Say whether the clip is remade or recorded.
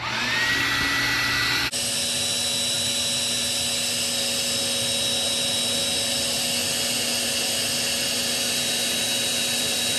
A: recorded